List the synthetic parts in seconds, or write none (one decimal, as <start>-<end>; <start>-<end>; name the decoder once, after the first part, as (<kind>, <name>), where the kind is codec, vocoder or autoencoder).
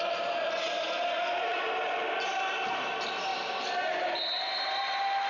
none